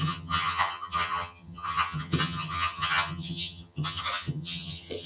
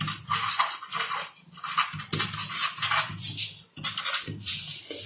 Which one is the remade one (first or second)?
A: first